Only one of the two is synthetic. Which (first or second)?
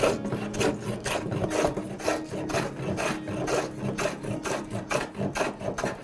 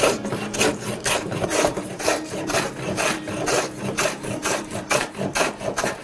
second